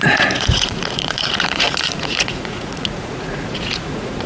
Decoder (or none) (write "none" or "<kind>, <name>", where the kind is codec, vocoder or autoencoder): vocoder, Vocos